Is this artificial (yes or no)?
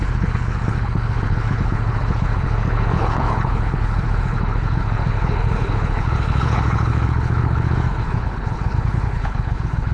yes